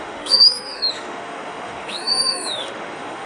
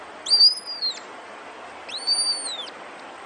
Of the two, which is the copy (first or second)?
first